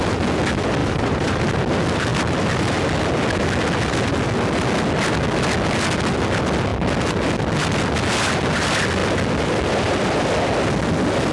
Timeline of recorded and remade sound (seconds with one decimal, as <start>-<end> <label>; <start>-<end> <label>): 0.0-0.8 recorded; 0.8-1.4 remade; 1.4-11.3 recorded